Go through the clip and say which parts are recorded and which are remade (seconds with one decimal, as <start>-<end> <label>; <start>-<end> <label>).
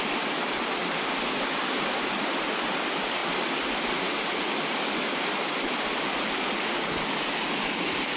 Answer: 0.0-8.2 recorded